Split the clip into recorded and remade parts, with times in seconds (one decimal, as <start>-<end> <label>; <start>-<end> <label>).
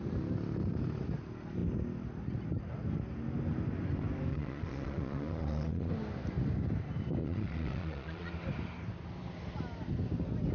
0.0-4.3 recorded; 4.3-5.9 remade; 5.9-7.2 recorded; 7.2-8.3 remade; 8.3-10.5 recorded